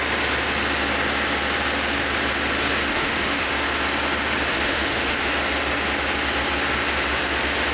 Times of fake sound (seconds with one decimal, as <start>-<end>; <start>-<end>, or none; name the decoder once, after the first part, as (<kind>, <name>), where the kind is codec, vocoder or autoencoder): 2.9-3.5 (autoencoder, DAC-VAE); 4.5-5.3